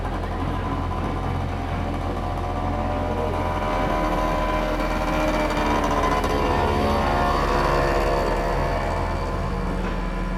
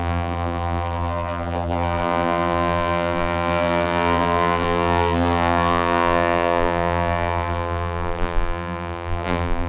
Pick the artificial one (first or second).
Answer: second